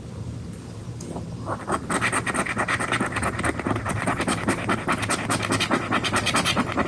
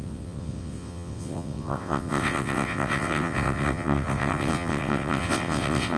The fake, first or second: second